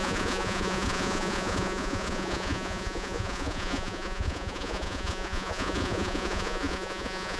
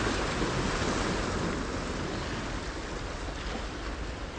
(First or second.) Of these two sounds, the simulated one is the first